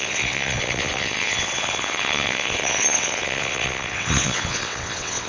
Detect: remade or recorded remade